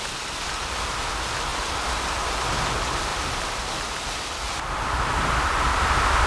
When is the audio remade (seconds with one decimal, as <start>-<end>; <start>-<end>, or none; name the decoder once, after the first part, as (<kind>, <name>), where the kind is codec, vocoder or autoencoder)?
3.1-4.8 (vocoder, BigVGAN v2)